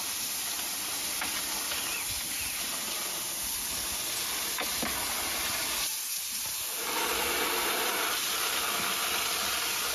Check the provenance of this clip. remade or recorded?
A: recorded